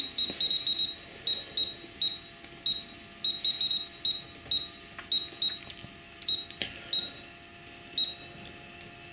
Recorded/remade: recorded